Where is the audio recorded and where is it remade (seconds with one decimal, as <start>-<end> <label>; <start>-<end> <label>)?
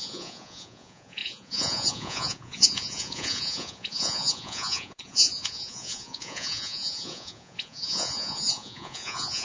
0.0-9.4 remade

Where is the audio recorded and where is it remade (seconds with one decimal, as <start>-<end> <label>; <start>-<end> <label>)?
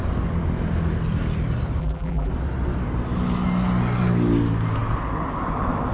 0.0-1.8 recorded; 1.8-2.3 remade; 2.3-5.9 recorded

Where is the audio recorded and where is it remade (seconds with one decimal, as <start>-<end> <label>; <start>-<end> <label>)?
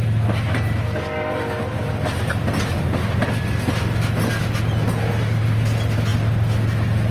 0.0-7.1 recorded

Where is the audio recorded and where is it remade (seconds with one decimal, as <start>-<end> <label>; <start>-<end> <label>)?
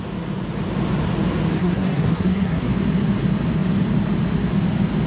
0.0-1.6 recorded; 1.6-2.7 remade; 2.7-5.1 recorded